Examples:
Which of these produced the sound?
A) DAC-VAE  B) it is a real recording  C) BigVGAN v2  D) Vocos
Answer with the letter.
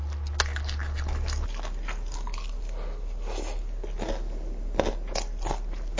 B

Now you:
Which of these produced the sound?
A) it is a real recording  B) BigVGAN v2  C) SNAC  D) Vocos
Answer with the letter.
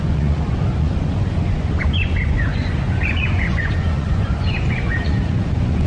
D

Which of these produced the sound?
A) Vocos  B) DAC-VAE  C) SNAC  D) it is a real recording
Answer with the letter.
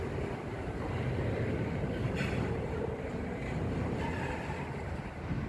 D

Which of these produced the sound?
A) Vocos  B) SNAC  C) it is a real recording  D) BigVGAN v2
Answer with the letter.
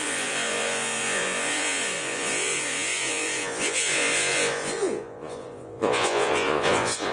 A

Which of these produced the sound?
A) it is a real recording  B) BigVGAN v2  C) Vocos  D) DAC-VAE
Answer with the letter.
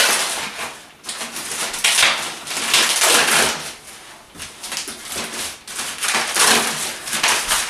A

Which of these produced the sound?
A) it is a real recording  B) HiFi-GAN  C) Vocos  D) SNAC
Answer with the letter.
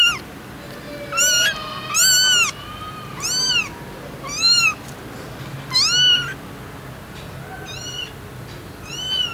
A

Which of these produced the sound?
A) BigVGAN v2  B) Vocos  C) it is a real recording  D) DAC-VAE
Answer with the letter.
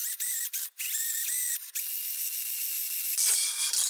C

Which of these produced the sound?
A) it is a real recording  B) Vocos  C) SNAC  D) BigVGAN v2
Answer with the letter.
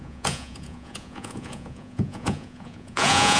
B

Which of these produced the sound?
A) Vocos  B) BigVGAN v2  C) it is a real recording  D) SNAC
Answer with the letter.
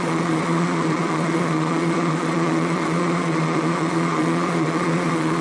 A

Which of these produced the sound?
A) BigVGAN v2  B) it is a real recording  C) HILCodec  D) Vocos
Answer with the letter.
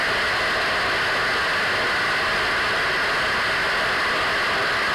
B